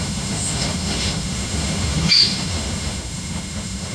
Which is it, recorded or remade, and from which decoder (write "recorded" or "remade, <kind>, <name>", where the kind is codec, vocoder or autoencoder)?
remade, autoencoder, DAC-VAE